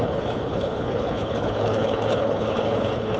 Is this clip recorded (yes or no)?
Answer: no